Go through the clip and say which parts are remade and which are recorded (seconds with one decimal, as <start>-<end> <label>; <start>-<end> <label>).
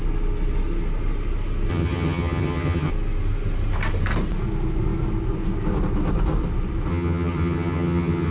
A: 0.0-1.7 recorded; 1.7-2.9 remade; 2.9-6.9 recorded; 6.9-8.3 remade